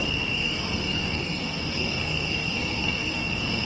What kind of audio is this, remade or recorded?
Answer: remade